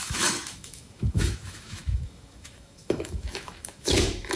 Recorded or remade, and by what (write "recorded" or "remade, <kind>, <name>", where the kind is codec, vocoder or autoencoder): remade, autoencoder, DAC-VAE